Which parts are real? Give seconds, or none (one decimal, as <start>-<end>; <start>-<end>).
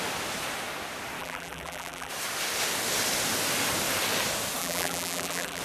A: 0.0-1.2; 2.1-4.6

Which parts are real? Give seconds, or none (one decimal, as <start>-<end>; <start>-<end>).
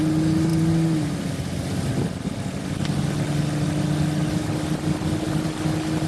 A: 0.0-6.1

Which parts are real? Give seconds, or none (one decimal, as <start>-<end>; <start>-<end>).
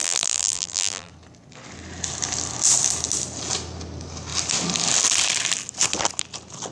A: 1.1-6.7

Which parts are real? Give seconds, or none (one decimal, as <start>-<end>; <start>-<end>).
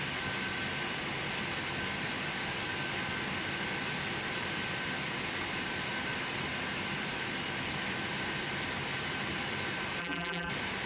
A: 0.0-10.0; 10.5-10.9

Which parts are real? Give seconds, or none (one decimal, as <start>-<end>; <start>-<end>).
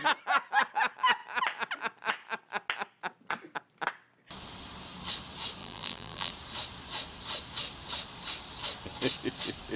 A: 0.0-5.6; 6.3-9.8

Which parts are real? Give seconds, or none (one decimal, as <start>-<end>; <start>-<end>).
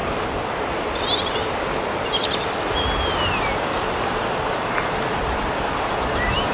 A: 0.0-6.5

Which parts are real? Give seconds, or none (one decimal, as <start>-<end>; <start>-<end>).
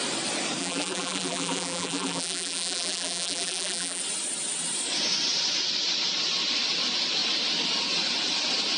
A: 0.0-0.6; 4.0-8.8